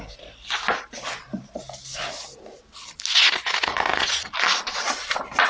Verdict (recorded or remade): recorded